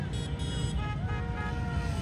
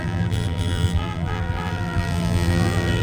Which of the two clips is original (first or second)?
first